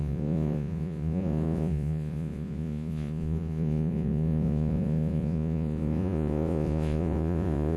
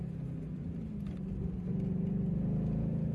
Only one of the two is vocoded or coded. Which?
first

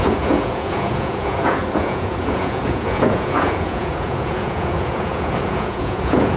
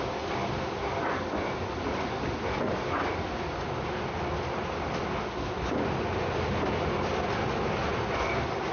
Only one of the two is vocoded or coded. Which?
first